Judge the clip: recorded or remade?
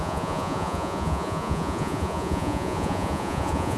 remade